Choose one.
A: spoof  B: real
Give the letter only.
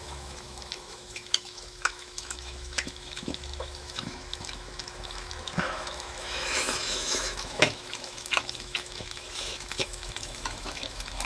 A